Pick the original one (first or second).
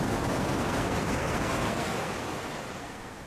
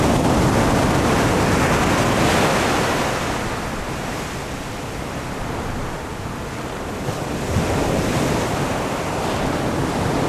second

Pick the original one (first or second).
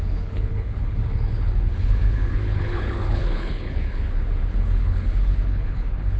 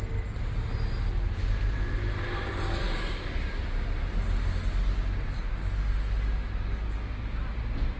second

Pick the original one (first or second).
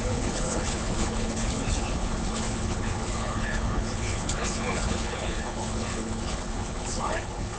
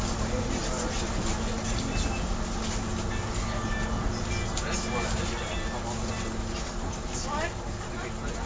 second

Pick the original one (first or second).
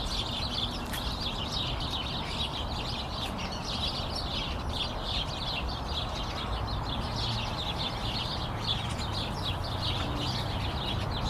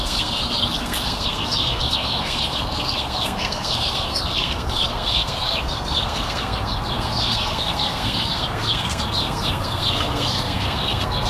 first